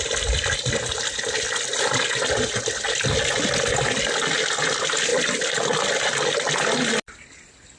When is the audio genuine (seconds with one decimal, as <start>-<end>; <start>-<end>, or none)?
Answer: 0.0-7.8